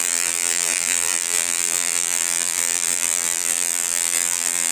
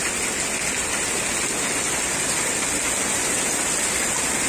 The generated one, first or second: first